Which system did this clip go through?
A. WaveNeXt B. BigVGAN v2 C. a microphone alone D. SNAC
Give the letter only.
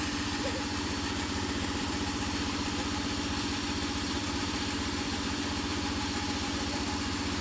B